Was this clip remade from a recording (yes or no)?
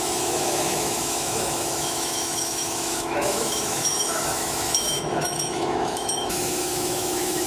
yes